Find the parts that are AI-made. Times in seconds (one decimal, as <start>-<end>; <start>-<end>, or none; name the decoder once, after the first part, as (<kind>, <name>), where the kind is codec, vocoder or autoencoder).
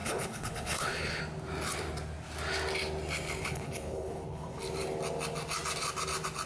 0.0-1.2 (codec, HILCodec); 3.4-4.6